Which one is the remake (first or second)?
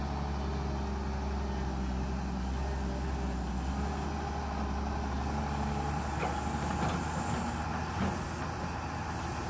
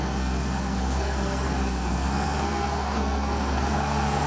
second